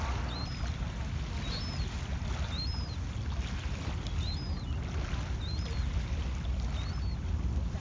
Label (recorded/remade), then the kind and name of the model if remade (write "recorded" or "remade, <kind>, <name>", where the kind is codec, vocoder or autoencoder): recorded